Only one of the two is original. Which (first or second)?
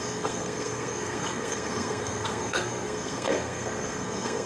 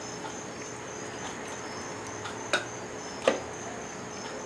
second